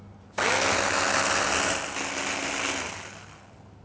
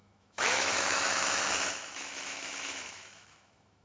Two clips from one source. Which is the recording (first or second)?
first